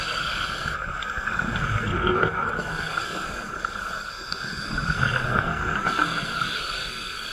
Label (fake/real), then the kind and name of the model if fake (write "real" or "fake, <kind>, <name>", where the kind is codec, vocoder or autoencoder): fake, codec, SNAC